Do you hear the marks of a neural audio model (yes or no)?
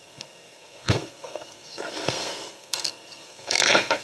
yes